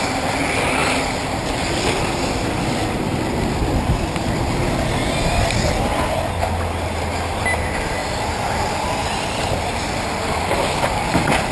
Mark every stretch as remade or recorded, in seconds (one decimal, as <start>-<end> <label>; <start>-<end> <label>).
0.0-11.5 recorded